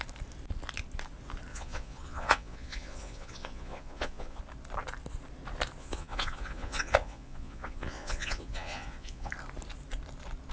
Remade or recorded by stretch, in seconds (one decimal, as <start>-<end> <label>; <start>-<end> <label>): 0.0-1.5 recorded; 1.5-4.4 remade; 4.4-5.8 recorded; 5.8-9.3 remade; 9.3-10.5 recorded